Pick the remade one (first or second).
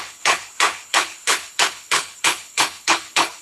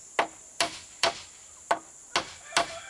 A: first